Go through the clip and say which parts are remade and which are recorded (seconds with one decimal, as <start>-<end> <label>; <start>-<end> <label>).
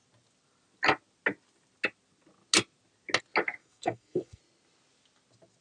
0.0-3.6 recorded; 3.6-4.4 remade; 4.4-5.6 recorded